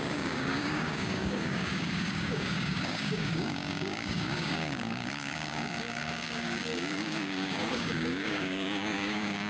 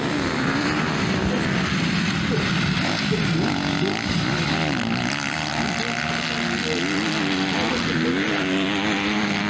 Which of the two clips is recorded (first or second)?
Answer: second